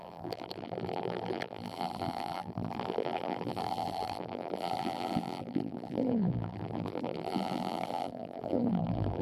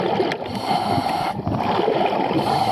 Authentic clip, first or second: second